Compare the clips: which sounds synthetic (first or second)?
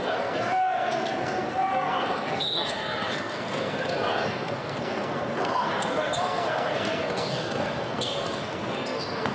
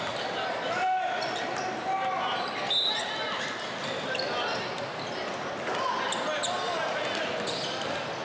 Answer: first